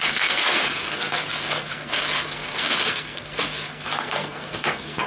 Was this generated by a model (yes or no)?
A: yes